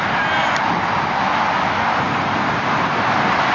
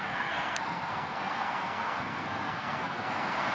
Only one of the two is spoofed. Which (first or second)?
second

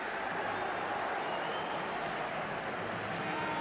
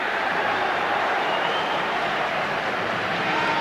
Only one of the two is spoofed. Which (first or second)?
second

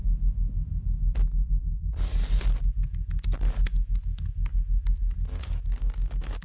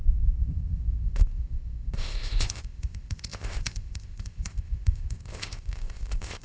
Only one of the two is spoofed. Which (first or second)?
second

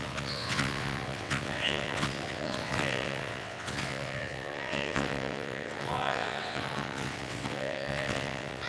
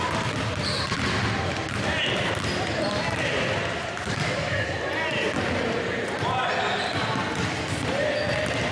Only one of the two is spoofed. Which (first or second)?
first